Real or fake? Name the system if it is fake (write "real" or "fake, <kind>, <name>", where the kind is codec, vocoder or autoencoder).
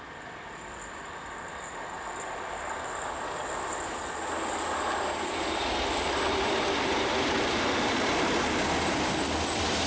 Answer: real